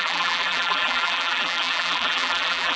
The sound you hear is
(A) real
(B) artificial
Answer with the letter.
B